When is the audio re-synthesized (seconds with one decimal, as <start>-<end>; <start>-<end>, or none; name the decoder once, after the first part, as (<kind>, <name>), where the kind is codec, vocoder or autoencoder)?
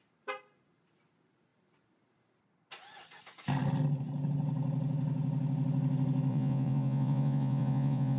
6.3-8.2 (vocoder, Vocos)